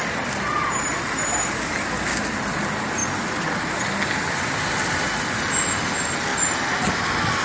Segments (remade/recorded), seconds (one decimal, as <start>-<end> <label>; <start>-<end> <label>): 0.0-7.4 recorded

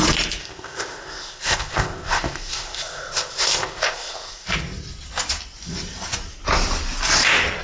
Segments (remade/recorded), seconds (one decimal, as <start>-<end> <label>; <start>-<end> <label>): 0.0-0.4 recorded; 0.4-4.5 remade; 4.5-7.6 recorded

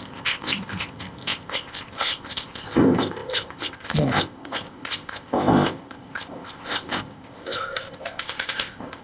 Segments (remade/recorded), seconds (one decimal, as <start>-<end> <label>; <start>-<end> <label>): 0.0-9.0 remade

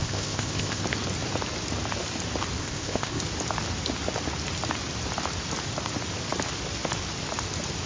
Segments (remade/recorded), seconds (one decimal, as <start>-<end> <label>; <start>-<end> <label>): 0.0-0.8 remade; 0.8-2.6 recorded; 2.6-3.2 remade; 3.2-7.9 recorded

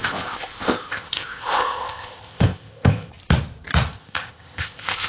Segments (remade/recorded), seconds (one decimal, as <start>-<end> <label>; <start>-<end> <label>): 0.0-3.1 remade; 3.1-4.0 recorded; 4.0-5.1 remade

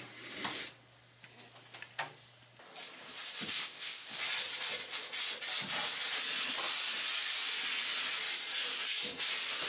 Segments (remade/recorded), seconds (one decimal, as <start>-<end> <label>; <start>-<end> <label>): 0.0-3.5 recorded; 3.5-4.2 remade; 4.2-9.7 recorded

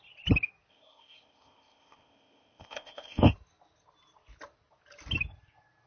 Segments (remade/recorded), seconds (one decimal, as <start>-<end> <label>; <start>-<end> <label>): 0.0-0.7 recorded; 0.7-3.3 remade; 3.3-5.9 recorded